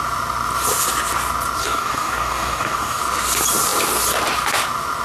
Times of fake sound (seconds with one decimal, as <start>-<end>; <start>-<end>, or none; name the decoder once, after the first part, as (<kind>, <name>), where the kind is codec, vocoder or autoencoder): 1.6-3.0 (codec, DAC)